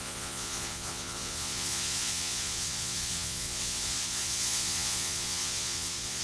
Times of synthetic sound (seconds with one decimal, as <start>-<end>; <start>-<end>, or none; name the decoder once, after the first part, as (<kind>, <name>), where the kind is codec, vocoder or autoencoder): 0.0-6.2 (vocoder, Vocos)